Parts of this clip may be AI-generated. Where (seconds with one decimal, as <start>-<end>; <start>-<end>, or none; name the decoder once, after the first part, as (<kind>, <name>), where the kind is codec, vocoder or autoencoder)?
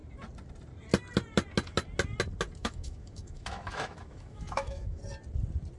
2.6-5.0 (autoencoder, DAC-VAE)